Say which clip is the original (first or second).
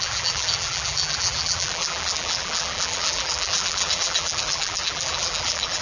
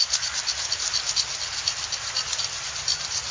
second